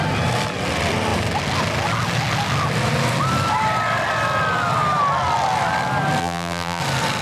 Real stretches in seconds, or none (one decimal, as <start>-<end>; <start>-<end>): 0.0-6.2; 6.8-7.2